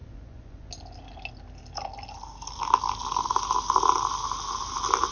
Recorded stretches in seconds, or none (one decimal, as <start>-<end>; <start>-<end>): 0.7-5.1